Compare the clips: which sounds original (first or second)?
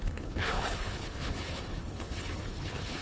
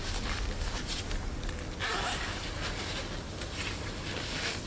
second